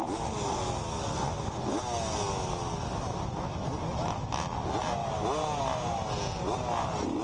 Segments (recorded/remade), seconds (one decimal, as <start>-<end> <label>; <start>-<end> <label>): 0.0-7.2 recorded